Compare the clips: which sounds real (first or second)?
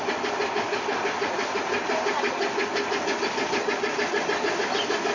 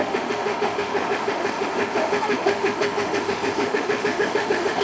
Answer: first